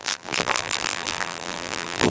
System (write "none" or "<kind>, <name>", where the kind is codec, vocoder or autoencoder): vocoder, BigVGAN v2